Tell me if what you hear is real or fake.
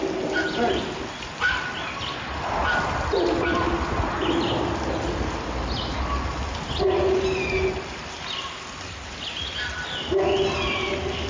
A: real